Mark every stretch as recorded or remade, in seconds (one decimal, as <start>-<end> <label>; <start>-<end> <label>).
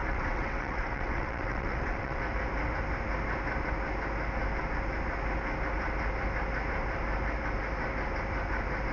0.0-2.2 remade; 2.2-8.9 recorded